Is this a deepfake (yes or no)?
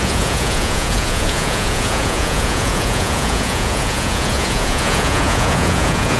yes